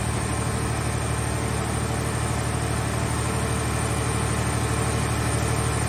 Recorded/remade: recorded